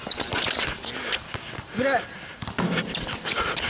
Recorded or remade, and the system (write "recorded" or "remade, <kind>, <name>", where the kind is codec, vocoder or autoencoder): recorded